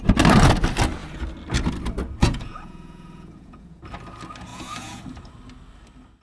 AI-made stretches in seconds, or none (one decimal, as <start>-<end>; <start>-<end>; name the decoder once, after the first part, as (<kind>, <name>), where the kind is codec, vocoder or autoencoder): 2.2-3.8 (vocoder, Vocos); 4.5-5.0